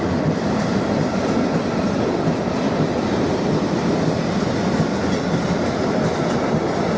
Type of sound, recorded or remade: remade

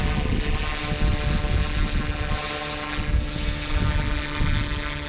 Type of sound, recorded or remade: recorded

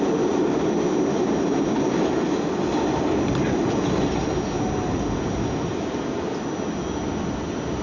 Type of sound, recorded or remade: recorded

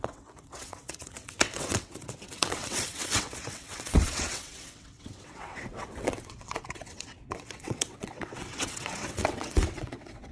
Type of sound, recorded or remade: remade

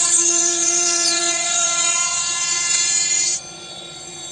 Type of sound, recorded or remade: remade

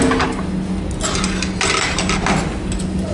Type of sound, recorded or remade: recorded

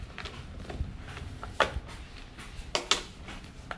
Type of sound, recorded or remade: recorded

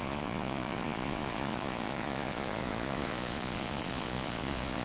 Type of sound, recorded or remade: remade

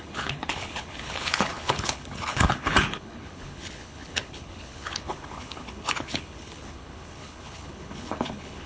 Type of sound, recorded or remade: remade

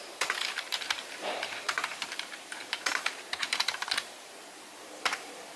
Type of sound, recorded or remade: remade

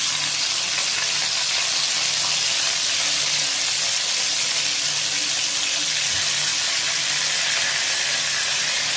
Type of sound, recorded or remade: recorded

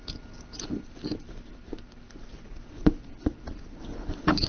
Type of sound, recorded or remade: recorded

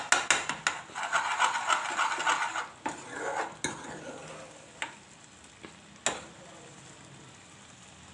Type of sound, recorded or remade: recorded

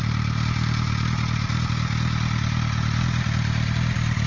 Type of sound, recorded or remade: recorded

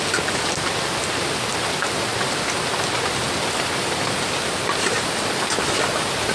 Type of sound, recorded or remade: recorded